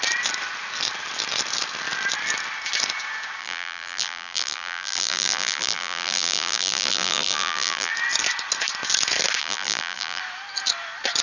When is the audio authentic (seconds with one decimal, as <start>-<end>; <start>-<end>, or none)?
0.0-3.4; 7.9-9.4; 10.2-11.2